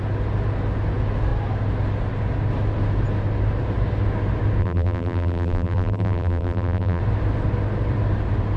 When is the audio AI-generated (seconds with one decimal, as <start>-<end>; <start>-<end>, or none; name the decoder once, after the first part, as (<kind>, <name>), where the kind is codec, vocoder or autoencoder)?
4.6-7.0 (vocoder, BigVGAN v2)